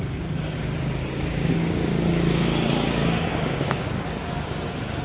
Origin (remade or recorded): remade